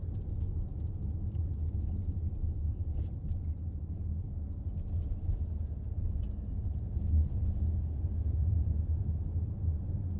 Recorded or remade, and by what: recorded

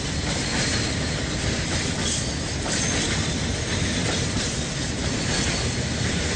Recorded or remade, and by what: remade, vocoder, BigVGAN v2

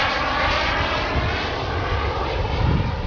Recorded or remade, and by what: remade, vocoder, BigVGAN v2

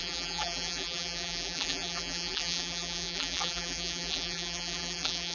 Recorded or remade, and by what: remade, vocoder, BigVGAN v2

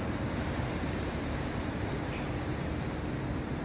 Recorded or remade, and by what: remade, vocoder, BigVGAN v2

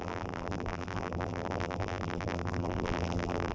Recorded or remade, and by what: remade, vocoder, BigVGAN v2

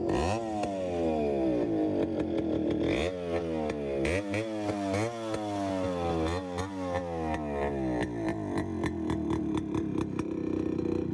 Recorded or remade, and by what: recorded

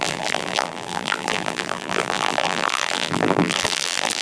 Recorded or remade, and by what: remade, vocoder, BigVGAN v2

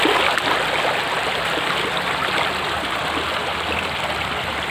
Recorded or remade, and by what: recorded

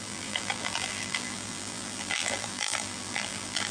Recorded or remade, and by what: remade, vocoder, BigVGAN v2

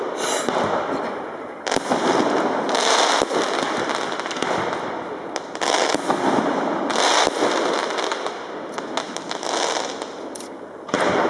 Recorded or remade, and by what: recorded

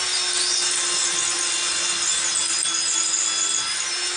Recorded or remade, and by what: recorded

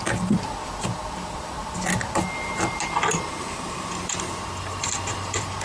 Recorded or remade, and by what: recorded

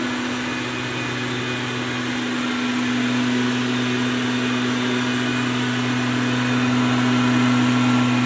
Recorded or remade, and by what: recorded